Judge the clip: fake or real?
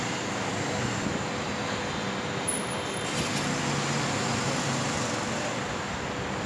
real